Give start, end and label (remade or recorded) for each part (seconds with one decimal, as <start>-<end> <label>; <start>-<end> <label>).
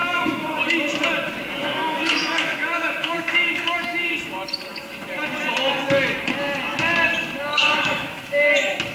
0.0-0.6 remade; 0.6-1.6 recorded; 1.6-4.1 remade; 4.1-7.5 recorded; 7.5-8.5 remade; 8.5-8.9 recorded